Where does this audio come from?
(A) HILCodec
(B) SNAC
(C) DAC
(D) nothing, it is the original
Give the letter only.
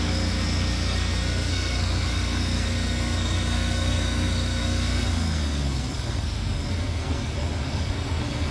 B